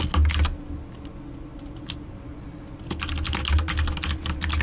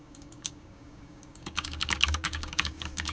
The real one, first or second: first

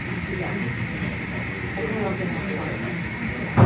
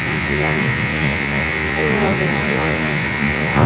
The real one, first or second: first